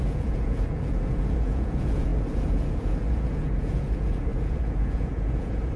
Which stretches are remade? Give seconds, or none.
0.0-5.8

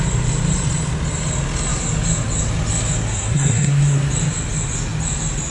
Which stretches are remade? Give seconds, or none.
3.1-4.1

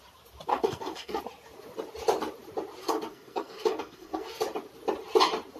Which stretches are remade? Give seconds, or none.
0.5-1.2; 2.8-4.4

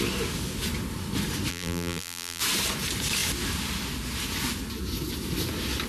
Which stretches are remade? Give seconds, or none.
1.5-2.4